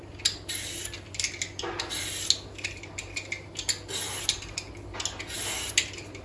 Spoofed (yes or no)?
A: no